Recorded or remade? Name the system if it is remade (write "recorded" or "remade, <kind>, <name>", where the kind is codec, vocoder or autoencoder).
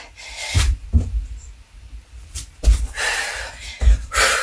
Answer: remade, vocoder, BigVGAN v2